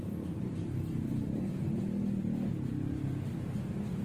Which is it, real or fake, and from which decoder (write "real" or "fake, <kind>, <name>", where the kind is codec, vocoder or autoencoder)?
real